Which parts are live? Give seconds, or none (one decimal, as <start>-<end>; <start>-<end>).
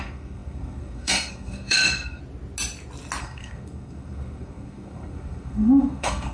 2.2-3.2